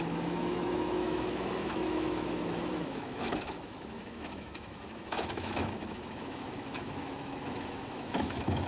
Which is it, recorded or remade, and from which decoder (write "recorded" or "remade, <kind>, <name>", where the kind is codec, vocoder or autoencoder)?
remade, autoencoder, DAC-VAE